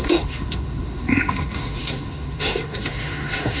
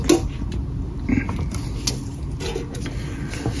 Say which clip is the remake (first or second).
first